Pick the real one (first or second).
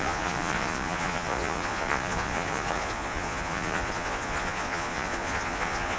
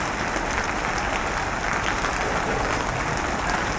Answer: second